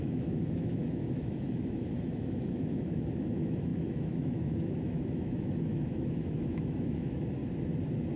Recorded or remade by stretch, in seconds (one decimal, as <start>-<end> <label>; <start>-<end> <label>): 0.0-7.4 remade; 7.4-8.2 recorded